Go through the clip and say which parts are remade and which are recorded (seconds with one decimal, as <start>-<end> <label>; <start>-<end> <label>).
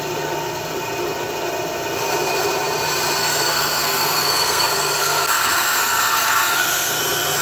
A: 0.0-3.2 recorded; 3.2-7.0 remade; 7.0-7.4 recorded